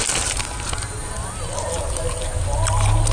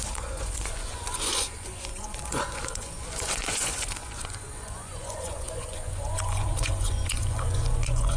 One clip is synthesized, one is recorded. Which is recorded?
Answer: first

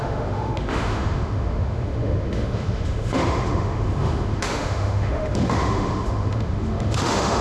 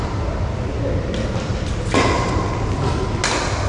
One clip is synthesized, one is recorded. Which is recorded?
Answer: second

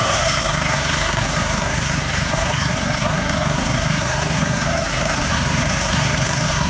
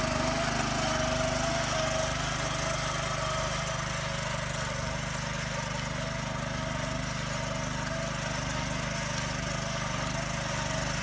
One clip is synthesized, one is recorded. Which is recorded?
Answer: second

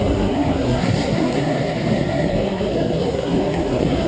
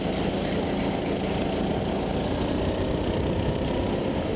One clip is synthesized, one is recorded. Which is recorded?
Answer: second